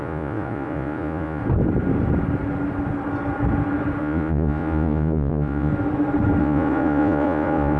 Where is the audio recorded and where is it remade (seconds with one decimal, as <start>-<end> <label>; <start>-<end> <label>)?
0.0-1.4 remade; 1.4-4.0 recorded; 4.0-5.7 remade; 5.7-6.4 recorded; 6.4-7.8 remade